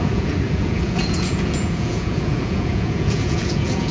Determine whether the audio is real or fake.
fake